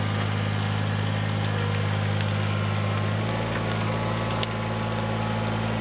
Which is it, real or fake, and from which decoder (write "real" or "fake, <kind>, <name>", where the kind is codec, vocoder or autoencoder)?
real